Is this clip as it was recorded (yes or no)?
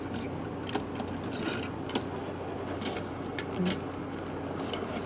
yes